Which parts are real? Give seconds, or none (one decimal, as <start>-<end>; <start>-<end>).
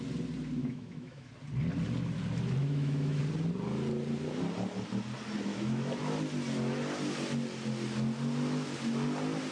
0.0-0.6; 1.3-2.6; 3.2-5.5; 6.1-9.5